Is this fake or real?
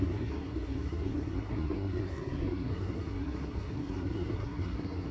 fake